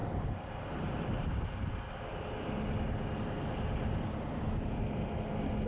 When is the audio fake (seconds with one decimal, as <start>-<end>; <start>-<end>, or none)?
none

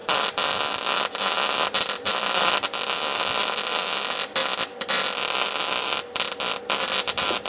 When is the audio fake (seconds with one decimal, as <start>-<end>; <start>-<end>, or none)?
none